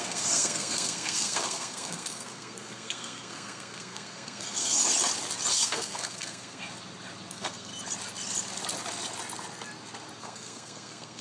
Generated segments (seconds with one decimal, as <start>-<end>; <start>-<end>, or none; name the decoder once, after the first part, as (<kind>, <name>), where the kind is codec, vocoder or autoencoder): 0.0-4.9 (codec, SNAC); 5.5-6.6; 7.3-7.7; 10.2-11.2